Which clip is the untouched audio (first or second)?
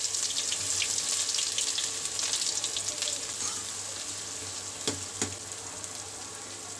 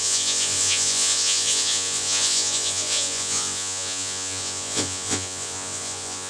first